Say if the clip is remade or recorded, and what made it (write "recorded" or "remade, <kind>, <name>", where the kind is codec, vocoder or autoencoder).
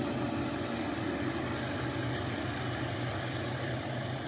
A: recorded